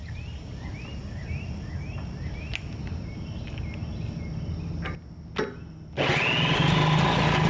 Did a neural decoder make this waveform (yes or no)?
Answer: no